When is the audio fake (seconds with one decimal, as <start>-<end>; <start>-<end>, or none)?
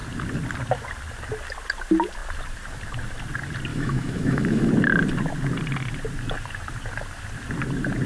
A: 3.7-4.7